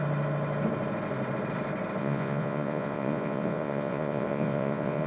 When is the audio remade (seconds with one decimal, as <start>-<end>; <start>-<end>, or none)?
2.0-5.1